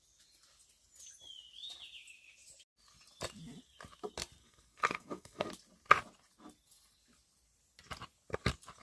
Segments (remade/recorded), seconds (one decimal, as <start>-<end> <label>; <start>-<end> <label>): 0.0-4.4 recorded; 4.4-5.5 remade; 5.5-8.8 recorded

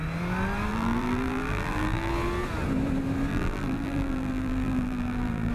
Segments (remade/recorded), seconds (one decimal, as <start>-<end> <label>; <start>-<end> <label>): 0.0-0.7 recorded; 0.7-2.1 remade; 2.1-3.3 recorded; 3.3-5.5 remade

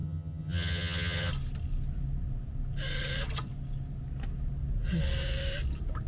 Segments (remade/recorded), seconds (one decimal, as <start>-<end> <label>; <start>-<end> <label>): 0.0-1.3 remade; 1.3-6.1 recorded

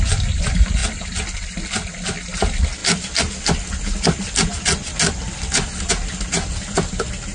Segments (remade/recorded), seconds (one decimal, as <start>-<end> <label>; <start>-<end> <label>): 0.0-7.3 recorded